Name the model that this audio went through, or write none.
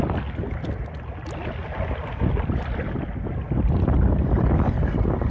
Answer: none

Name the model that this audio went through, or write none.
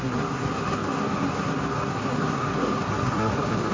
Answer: codec, SNAC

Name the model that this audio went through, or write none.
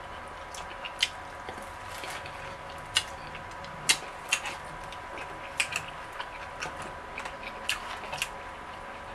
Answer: none